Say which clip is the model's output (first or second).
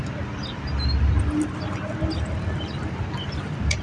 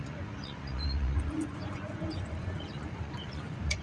second